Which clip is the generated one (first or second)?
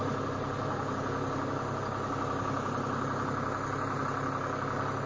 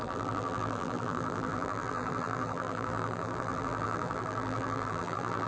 second